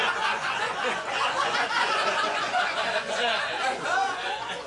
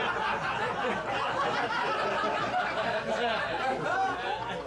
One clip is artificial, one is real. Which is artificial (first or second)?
first